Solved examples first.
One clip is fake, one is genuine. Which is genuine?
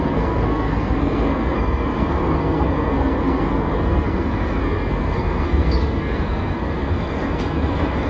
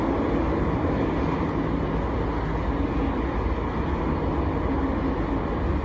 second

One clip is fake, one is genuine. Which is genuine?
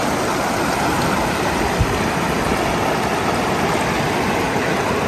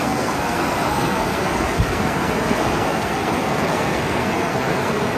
first